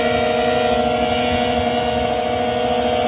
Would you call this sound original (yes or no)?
yes